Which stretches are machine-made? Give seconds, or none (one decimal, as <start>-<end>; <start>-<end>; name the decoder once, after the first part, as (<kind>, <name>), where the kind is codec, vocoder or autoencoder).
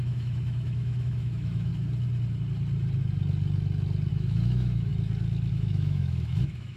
0.0-1.7 (autoencoder, DAC-VAE); 4.1-4.9; 5.5-6.8